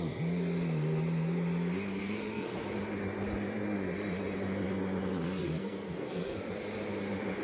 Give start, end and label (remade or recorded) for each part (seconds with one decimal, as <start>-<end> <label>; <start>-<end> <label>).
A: 0.0-2.0 recorded; 2.0-2.6 remade; 2.6-5.4 recorded; 5.4-6.5 remade; 6.5-7.4 recorded